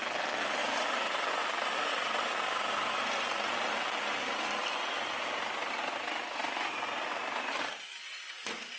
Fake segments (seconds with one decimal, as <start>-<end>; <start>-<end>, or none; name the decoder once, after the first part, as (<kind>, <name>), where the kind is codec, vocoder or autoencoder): none